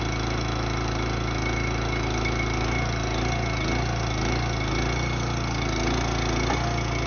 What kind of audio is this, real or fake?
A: real